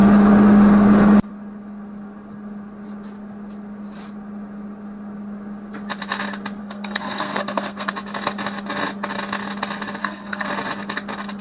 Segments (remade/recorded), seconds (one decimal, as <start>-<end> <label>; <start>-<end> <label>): 0.0-6.6 recorded; 6.6-7.9 remade; 7.9-10.0 recorded; 10.0-10.5 remade; 10.5-11.4 recorded